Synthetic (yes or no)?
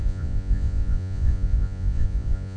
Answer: yes